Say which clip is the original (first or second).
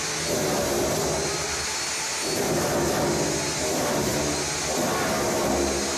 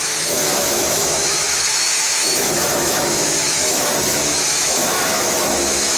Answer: first